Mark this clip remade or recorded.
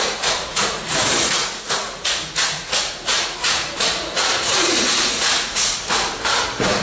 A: remade